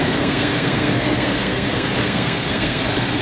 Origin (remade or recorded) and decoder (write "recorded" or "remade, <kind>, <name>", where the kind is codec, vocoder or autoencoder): remade, codec, SNAC